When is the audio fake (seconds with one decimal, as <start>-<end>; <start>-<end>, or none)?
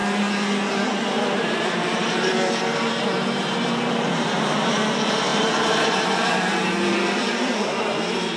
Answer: 1.4-2.3; 2.9-8.4